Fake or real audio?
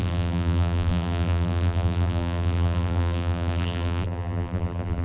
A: fake